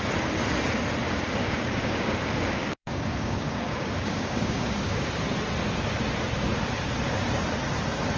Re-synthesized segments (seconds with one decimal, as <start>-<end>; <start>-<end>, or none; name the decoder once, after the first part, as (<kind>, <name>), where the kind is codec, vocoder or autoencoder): 1.4-5.1 (codec, DAC)